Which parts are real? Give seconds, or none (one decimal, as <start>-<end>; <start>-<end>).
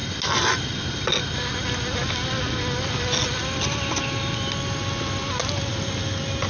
0.0-6.5